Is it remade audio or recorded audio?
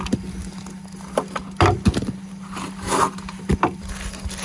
recorded